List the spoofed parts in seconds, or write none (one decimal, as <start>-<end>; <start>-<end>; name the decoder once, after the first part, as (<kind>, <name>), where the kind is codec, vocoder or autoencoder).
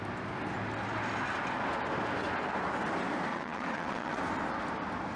3.3-4.2 (vocoder, WaveNeXt)